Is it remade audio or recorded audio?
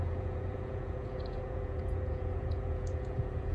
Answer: remade